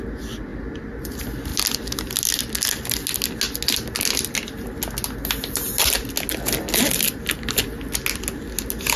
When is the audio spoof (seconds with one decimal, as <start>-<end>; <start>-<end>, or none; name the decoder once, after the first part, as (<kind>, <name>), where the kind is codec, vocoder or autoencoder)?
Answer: none